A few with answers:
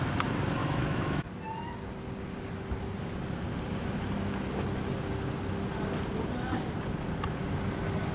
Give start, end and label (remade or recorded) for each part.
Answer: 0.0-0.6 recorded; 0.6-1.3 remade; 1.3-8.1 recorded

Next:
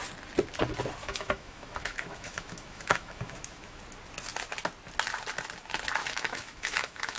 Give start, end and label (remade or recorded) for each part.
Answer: 0.0-1.0 recorded; 1.0-3.8 remade; 3.8-6.0 recorded; 6.0-7.2 remade

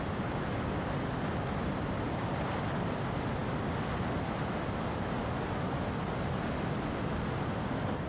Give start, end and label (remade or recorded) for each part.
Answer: 0.0-8.1 recorded

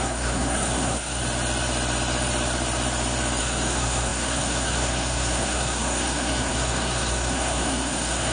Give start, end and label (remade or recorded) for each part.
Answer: 0.0-1.2 remade; 1.2-3.4 recorded; 3.4-8.3 remade

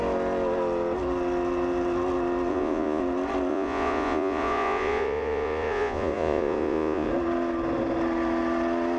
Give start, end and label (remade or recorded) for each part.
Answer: 0.0-2.5 recorded; 2.5-3.0 remade; 3.0-3.5 recorded; 3.5-7.1 remade; 7.1-9.0 recorded

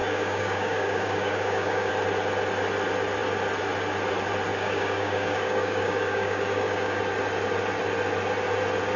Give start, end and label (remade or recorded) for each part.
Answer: 0.0-1.9 remade; 1.9-4.5 recorded; 4.5-7.0 remade; 7.0-9.0 recorded

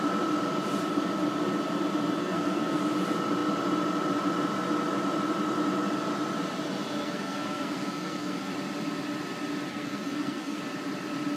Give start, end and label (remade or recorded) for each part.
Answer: 0.0-2.2 recorded; 2.2-2.8 remade; 2.8-7.0 recorded; 7.0-8.5 remade; 8.5-9.7 recorded; 9.7-10.6 remade; 10.6-11.4 recorded